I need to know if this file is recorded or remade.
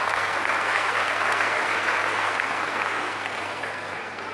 remade